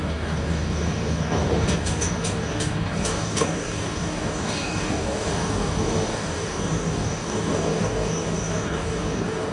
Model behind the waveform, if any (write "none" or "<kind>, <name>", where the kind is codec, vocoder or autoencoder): codec, DAC